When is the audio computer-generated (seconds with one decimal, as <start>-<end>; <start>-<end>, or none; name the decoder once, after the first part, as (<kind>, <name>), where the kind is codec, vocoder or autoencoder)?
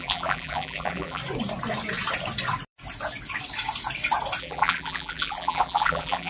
0.0-1.2 (vocoder, BigVGAN v2); 4.4-6.3